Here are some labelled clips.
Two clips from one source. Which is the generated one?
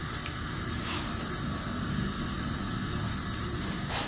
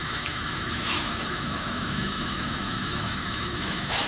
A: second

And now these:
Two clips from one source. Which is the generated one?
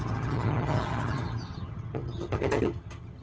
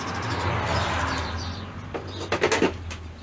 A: first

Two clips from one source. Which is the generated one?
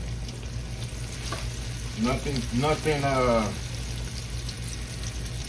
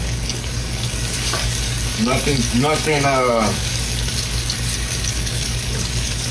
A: second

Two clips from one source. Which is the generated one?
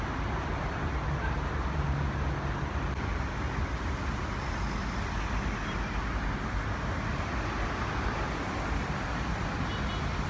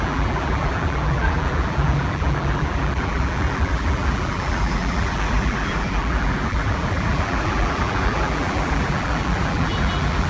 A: second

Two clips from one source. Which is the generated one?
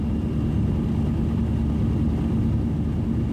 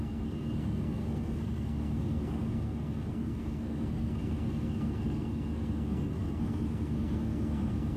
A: second